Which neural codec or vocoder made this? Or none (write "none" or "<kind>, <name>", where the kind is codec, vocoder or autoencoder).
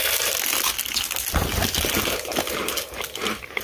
none